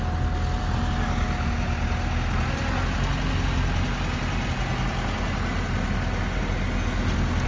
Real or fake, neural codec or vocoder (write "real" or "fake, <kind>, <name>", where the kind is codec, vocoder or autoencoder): real